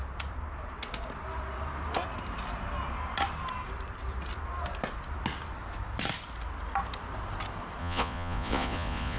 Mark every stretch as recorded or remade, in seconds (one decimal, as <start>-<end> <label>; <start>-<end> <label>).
0.0-7.8 recorded; 7.8-9.2 remade